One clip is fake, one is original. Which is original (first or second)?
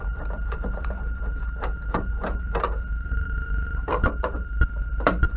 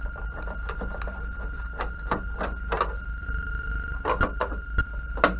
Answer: second